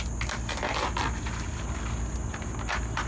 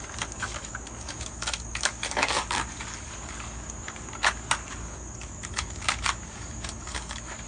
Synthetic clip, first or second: second